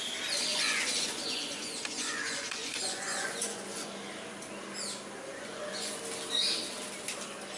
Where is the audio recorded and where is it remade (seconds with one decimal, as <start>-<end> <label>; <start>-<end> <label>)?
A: 0.0-0.5 recorded; 0.5-3.9 remade; 3.9-5.3 recorded; 5.3-6.0 remade; 6.0-7.6 recorded